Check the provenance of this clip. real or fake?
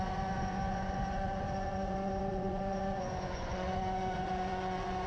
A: fake